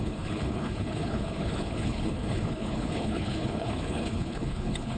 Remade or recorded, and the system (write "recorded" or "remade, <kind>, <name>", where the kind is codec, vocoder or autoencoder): remade, codec, HILCodec